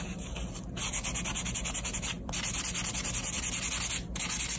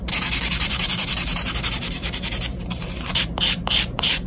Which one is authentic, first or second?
first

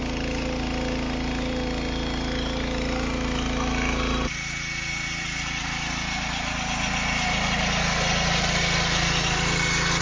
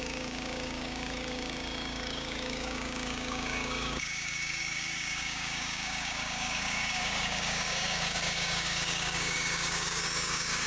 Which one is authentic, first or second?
first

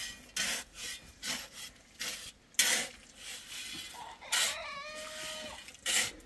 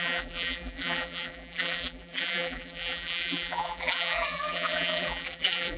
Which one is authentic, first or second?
first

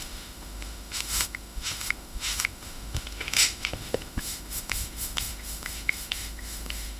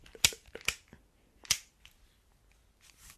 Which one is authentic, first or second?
second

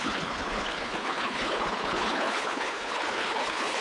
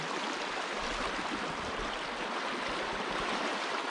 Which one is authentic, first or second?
second